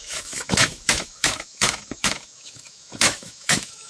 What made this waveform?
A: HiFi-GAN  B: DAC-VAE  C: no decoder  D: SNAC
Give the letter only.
B